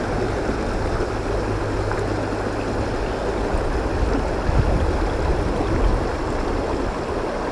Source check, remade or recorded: recorded